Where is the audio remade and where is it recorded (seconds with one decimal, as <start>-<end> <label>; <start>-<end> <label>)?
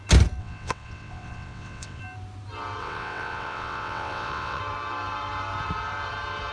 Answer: 0.0-0.4 recorded; 0.4-2.0 remade; 2.0-2.8 recorded; 2.8-4.6 remade; 4.6-6.5 recorded